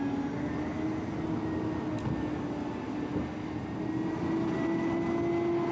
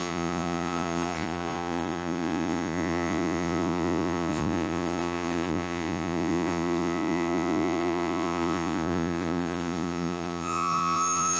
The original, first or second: first